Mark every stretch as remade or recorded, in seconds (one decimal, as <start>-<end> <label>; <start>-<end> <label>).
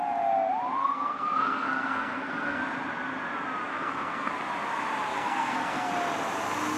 0.0-0.8 recorded; 0.8-2.6 remade; 2.6-3.7 recorded; 3.7-4.3 remade; 4.3-5.1 recorded; 5.1-5.9 remade; 5.9-6.8 recorded